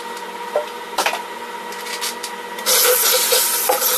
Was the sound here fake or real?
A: real